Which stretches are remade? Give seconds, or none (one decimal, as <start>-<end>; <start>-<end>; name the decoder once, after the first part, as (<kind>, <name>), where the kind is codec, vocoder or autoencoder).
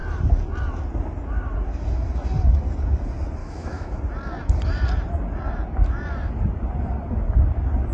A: 3.4-4.0 (autoencoder, DAC-VAE)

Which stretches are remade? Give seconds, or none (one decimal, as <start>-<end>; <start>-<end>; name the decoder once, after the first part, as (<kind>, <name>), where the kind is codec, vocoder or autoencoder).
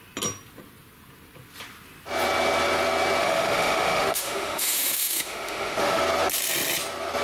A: 3.2-6.0 (autoencoder, DAC-VAE)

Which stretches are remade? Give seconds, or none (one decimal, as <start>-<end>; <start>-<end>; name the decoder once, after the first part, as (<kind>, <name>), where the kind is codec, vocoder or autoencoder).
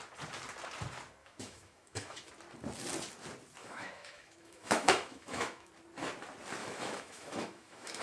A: 1.2-2.3 (autoencoder, DAC-VAE); 3.6-5.7; 6.6-8.0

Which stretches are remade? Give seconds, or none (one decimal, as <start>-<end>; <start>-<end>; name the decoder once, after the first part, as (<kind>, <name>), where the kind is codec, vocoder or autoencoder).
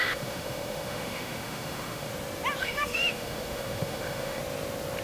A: 0.0-2.1 (autoencoder, DAC-VAE); 2.6-4.4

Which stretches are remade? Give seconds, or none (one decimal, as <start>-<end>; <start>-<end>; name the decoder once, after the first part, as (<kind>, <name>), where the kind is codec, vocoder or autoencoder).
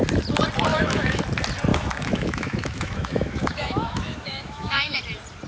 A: 0.7-1.2 (autoencoder, DAC-VAE); 1.7-5.0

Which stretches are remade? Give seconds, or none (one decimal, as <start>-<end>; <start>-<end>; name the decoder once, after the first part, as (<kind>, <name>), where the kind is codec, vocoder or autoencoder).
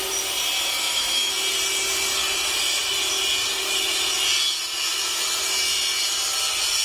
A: 0.7-1.3 (autoencoder, DAC-VAE)